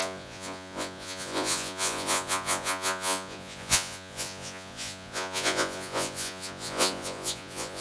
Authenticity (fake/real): fake